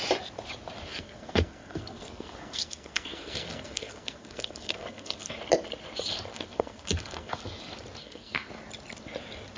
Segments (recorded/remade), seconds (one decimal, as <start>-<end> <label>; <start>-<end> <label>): 0.0-0.9 recorded; 0.9-5.3 remade; 5.3-6.3 recorded; 6.3-7.4 remade; 7.4-8.0 recorded; 8.0-8.5 remade; 8.5-9.6 recorded

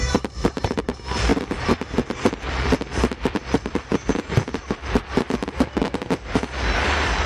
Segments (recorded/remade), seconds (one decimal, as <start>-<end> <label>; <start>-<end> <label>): 0.0-1.3 recorded; 1.3-4.8 remade; 4.8-7.3 recorded

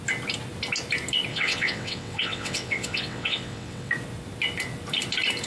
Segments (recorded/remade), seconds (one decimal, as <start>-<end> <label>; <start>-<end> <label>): 0.0-1.3 recorded; 1.3-3.9 remade; 3.9-5.5 recorded

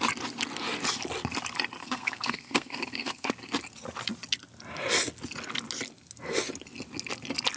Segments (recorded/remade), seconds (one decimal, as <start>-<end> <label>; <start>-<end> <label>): 0.0-1.8 recorded; 1.8-3.3 remade; 3.3-7.6 recorded